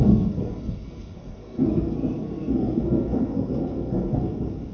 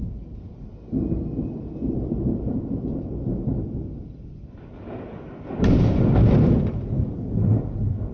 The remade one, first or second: first